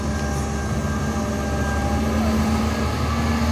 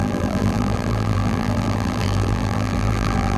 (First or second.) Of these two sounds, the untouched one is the first